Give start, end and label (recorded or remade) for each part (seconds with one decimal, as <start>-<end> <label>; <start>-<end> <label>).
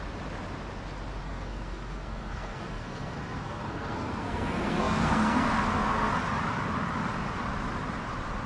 0.0-1.2 recorded; 1.2-6.1 remade; 6.1-8.5 recorded